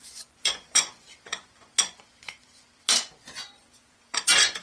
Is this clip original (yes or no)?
no